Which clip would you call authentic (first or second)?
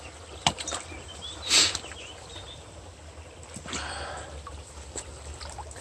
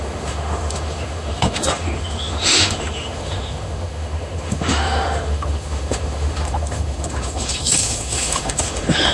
first